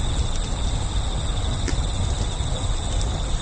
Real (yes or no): yes